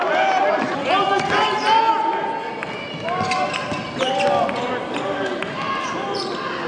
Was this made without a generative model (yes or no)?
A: yes